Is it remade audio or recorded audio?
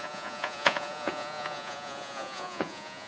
remade